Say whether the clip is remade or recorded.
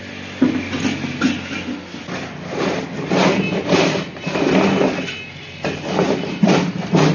recorded